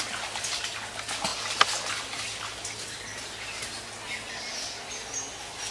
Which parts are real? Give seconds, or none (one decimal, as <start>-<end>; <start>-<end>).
0.0-5.7